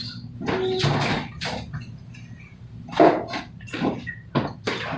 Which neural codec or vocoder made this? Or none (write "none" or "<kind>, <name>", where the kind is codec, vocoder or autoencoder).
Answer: none